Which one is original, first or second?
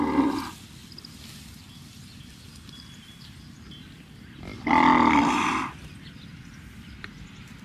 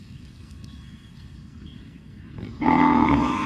first